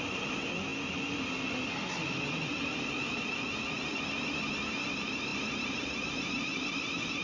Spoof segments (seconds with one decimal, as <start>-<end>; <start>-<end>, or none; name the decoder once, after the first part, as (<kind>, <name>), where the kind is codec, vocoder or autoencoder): 0.0-0.7 (vocoder, BigVGAN v2); 4.5-7.2